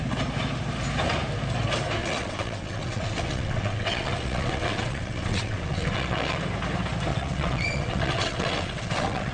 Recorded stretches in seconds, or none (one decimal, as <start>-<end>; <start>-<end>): 0.0-2.0; 6.4-7.1